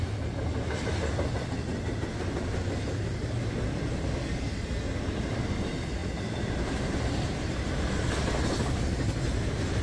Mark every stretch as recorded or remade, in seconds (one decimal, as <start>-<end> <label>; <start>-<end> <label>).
0.0-6.0 recorded; 6.0-7.1 remade; 7.1-9.8 recorded